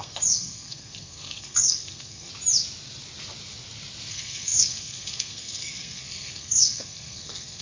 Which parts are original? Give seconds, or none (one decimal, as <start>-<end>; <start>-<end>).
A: 2.3-4.1